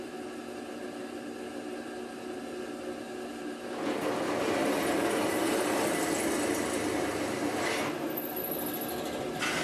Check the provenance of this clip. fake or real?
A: real